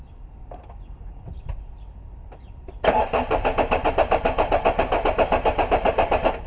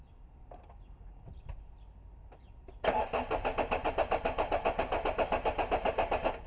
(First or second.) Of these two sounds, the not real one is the first